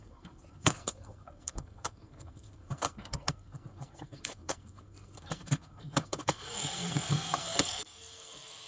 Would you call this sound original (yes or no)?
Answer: no